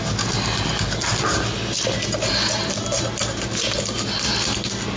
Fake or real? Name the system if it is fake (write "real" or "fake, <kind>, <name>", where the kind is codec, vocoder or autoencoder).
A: real